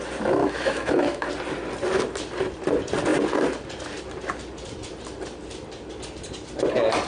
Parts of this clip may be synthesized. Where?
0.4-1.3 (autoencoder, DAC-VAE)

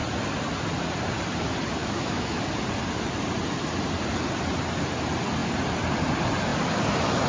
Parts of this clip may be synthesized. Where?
1.8-2.4 (autoencoder, DAC-VAE)

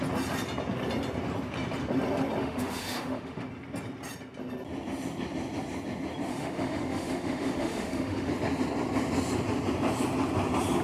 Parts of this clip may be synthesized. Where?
2.4-3.4 (autoencoder, DAC-VAE); 6.3-8.3

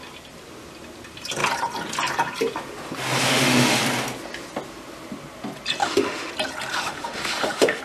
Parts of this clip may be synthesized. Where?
3.2-3.8 (autoencoder, DAC-VAE); 5.8-6.3; 6.7-7.8

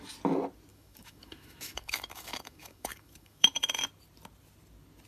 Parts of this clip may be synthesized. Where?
0.7-3.8 (autoencoder, DAC-VAE)